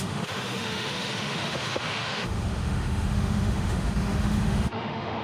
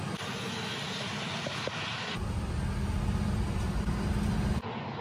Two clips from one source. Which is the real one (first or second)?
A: second